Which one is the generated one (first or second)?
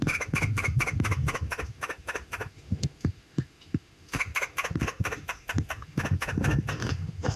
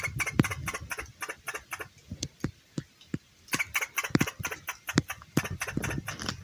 first